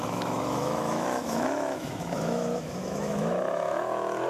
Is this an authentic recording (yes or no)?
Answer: no